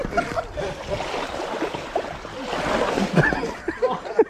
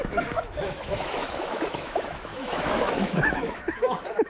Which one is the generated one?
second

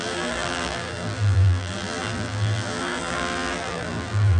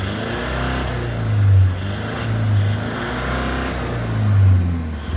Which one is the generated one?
first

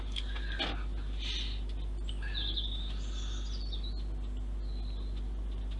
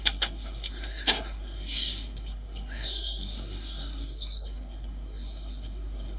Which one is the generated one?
second